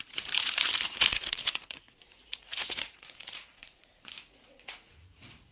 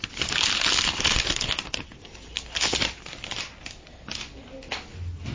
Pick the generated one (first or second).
first